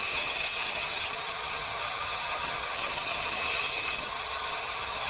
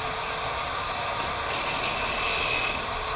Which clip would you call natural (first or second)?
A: second